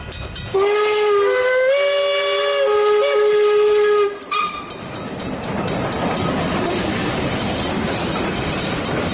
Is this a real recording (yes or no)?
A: yes